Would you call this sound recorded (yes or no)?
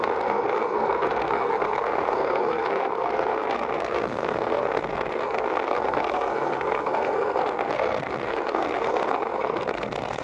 no